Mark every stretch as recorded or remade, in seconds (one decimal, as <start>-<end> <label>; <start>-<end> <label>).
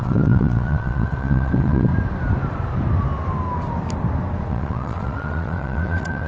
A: 0.0-1.9 remade; 1.9-4.5 recorded; 4.5-6.3 remade